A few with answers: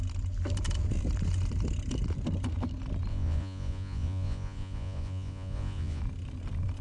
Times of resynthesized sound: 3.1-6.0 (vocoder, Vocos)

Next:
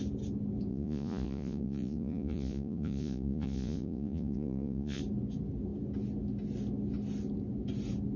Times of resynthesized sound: 0.7-5.0 (vocoder, Vocos)

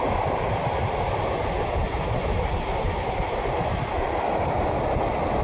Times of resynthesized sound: none